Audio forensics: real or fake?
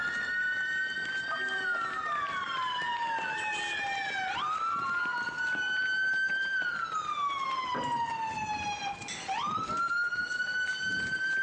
real